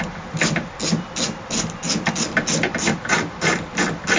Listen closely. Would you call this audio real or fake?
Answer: real